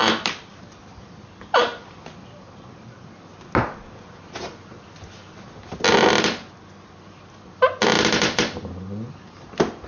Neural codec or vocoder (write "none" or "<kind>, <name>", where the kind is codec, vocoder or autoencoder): none